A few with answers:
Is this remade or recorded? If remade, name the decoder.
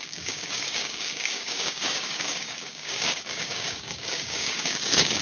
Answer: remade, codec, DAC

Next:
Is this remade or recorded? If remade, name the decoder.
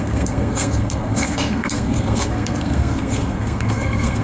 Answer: remade, codec, SNAC